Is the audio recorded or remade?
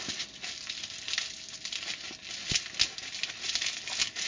recorded